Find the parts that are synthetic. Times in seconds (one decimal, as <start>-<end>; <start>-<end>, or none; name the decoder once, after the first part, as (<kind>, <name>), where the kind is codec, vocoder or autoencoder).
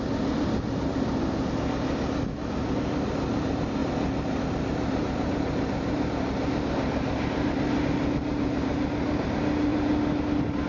3.8-4.4 (vocoder, BigVGAN v2); 9.7-10.7